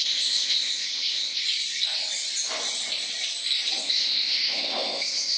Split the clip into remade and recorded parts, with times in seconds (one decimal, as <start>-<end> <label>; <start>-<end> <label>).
0.0-1.4 remade; 1.4-3.8 recorded; 3.8-5.4 remade